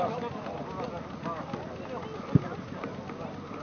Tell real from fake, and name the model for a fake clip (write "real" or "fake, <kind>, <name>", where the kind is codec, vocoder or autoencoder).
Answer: real